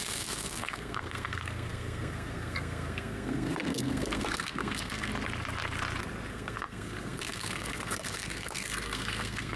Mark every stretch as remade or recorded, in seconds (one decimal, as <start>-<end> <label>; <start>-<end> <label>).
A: 0.0-5.1 remade; 5.1-6.3 recorded; 6.3-9.6 remade

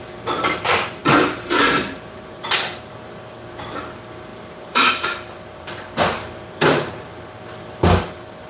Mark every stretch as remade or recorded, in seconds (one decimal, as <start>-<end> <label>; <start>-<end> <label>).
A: 0.0-8.5 remade